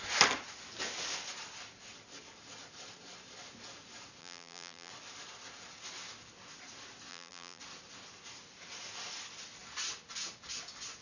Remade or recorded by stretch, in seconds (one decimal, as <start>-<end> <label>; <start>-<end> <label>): 0.0-4.2 recorded; 4.2-4.9 remade; 4.9-7.1 recorded; 7.1-7.6 remade; 7.6-11.0 recorded